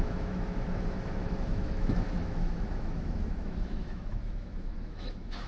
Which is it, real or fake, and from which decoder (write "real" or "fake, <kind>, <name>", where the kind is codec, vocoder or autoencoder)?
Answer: fake, autoencoder, DAC-VAE